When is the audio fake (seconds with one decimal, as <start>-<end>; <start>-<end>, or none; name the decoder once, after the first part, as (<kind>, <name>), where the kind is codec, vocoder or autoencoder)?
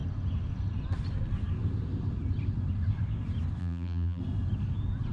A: 3.6-4.2 (vocoder, BigVGAN v2)